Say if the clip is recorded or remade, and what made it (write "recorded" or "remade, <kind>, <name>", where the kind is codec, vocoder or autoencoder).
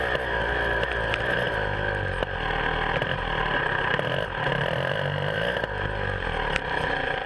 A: recorded